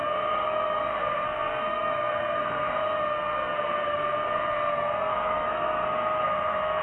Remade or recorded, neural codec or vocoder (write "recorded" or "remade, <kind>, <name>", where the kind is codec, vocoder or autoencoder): remade, codec, SNAC